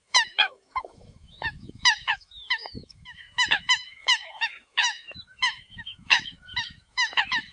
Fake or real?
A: fake